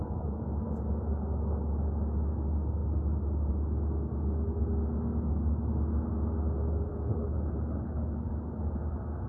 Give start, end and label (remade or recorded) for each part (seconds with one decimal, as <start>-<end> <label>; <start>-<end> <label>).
0.0-6.9 recorded; 6.9-8.3 remade; 8.3-9.3 recorded